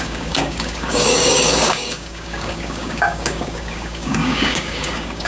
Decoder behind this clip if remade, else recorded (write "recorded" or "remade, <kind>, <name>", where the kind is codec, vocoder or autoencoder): remade, codec, DAC